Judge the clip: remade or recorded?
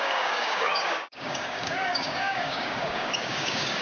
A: remade